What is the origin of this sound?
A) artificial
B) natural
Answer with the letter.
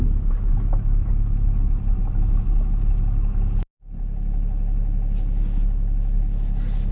B